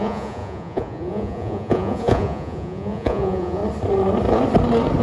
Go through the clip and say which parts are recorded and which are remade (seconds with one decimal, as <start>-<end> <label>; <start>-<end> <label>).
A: 0.0-3.6 remade; 3.6-5.0 recorded